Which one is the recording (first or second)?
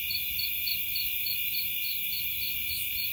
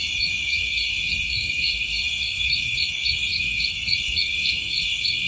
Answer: first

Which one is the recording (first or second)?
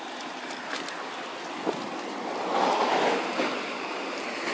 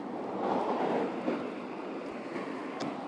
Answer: second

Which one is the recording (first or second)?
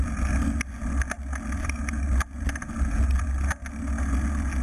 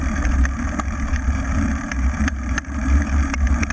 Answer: first